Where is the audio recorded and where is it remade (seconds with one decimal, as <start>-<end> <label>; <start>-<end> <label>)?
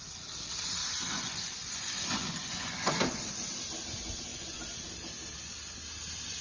0.0-0.8 recorded; 0.8-2.9 remade; 2.9-4.3 recorded; 4.3-4.8 remade; 4.8-6.4 recorded